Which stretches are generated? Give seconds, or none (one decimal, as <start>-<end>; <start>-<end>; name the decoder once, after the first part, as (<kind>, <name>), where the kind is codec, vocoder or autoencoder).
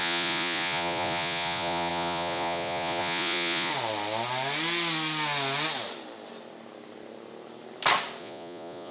0.0-3.7 (vocoder, Vocos); 8.2-8.9